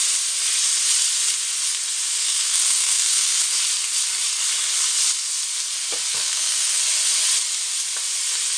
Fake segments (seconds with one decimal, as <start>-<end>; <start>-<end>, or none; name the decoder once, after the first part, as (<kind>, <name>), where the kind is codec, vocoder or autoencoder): 2.2-3.4 (codec, SNAC); 6.1-6.8